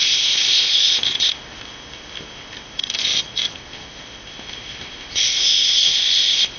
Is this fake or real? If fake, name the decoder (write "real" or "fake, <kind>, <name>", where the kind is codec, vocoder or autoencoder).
fake, codec, ZipCodec